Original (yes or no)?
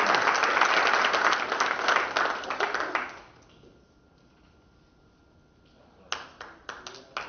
yes